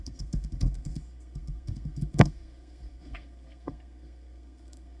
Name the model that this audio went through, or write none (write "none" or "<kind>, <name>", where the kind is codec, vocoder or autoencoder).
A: codec, SNAC